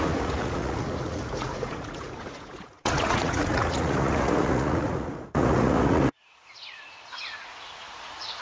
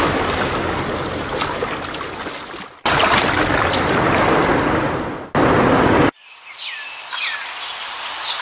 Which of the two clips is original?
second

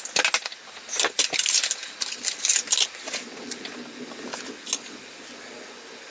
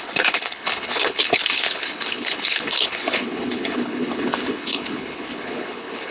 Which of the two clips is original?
first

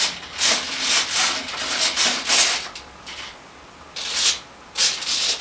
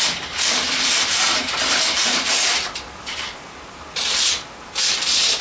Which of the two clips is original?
first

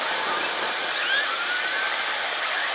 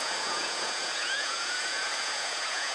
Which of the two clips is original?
first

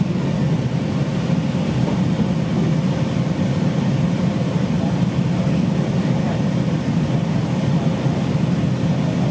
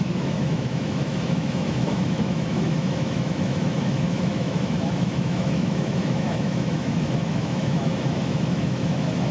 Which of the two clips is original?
first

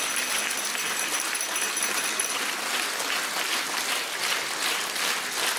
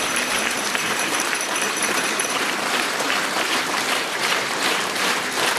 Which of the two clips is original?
first